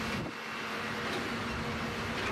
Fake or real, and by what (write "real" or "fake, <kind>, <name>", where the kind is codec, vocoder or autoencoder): real